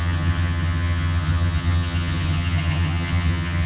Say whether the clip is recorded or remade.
remade